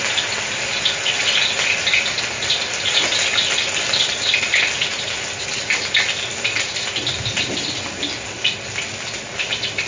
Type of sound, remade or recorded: recorded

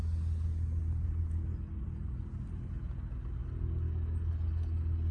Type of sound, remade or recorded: recorded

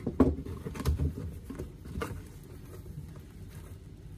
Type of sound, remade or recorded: remade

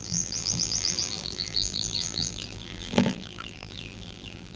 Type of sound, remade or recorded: remade